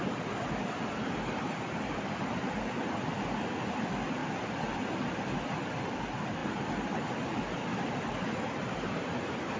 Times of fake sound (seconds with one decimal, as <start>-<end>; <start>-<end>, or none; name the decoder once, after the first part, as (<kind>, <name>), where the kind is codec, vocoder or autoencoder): none